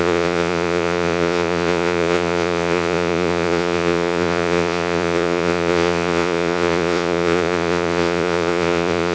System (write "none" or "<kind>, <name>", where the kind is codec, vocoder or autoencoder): vocoder, Vocos